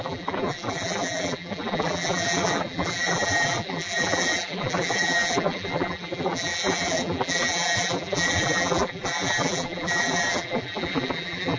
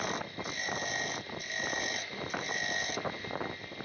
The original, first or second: second